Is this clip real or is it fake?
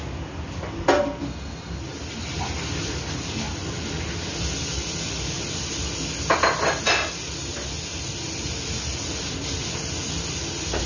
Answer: real